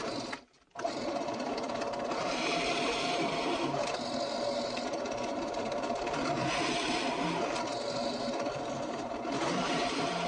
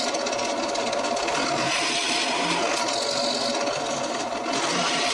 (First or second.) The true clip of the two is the second